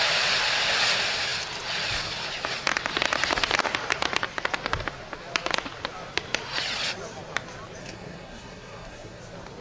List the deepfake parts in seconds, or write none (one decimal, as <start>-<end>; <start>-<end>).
7.8-9.2